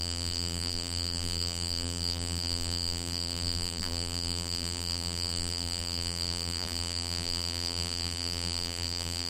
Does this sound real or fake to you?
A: fake